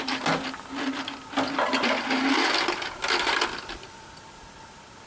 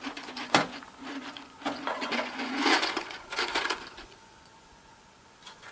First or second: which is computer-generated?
second